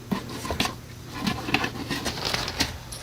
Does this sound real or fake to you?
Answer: real